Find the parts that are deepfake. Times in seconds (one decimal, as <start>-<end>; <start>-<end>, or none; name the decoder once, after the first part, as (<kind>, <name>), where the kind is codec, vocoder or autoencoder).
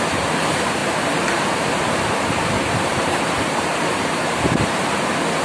0.0-5.4 (vocoder, BigVGAN v2)